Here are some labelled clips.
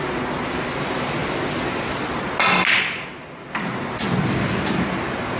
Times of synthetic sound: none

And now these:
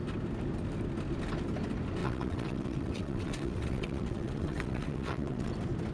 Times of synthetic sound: 2.0-5.5 (vocoder, WaveNeXt)

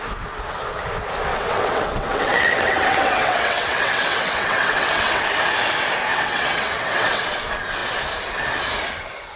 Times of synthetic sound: 1.3-5.2 (vocoder, WaveNeXt); 6.1-7.3

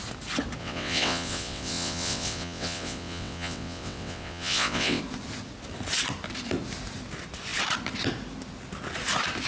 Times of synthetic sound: 0.6-5.0 (vocoder, WaveNeXt)

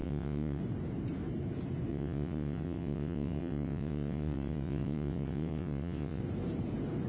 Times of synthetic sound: 0.0-0.6 (vocoder, WaveNeXt); 1.9-6.2

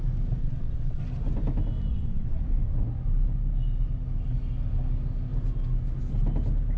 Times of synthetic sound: 0.4-1.0 (vocoder, WaveNeXt); 1.9-2.4

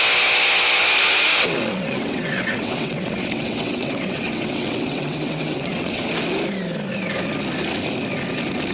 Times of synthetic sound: 1.3-6.1 (vocoder, WaveNeXt)